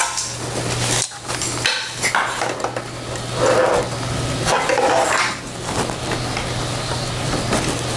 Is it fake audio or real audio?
real